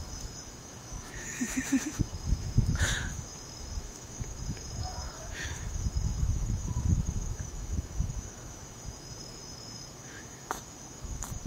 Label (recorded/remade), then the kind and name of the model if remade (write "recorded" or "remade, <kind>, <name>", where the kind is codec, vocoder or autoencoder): remade, autoencoder, DAC-VAE